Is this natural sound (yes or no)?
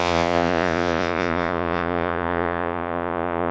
no